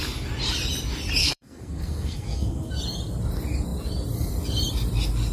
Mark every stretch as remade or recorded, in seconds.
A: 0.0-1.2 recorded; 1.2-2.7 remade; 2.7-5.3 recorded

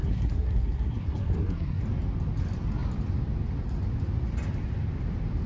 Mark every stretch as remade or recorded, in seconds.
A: 0.0-1.8 remade; 1.8-5.5 recorded

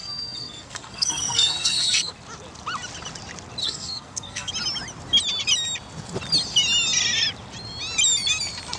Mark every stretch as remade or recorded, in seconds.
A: 0.0-2.1 remade; 2.1-3.6 recorded; 3.6-4.5 remade; 4.5-8.8 recorded

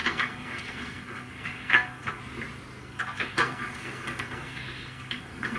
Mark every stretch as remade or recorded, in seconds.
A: 0.0-2.2 remade; 2.2-2.8 recorded; 2.8-5.6 remade

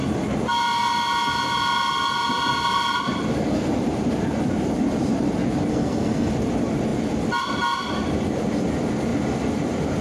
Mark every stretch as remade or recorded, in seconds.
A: 0.0-5.7 recorded; 5.7-6.3 remade; 6.3-10.0 recorded